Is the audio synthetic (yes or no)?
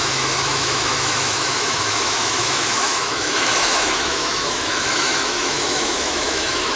yes